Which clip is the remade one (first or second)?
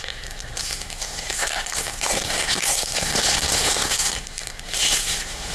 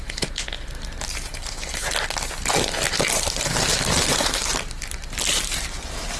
first